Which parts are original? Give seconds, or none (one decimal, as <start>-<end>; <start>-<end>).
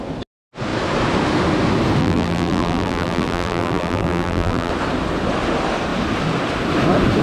0.0-2.0; 4.7-7.2